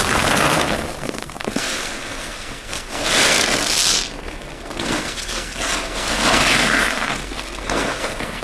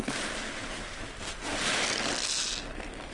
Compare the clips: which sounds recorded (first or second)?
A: second